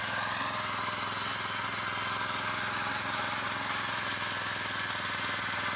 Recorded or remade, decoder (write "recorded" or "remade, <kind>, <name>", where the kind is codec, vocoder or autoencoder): recorded